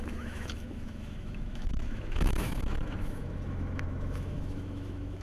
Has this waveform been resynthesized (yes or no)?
yes